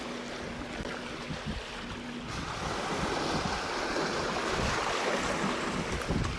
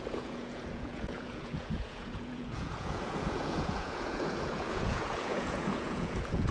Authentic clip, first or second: first